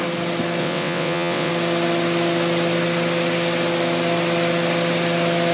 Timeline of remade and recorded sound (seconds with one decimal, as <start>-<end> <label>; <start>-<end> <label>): 0.0-0.6 recorded; 0.6-1.5 remade; 1.5-5.5 recorded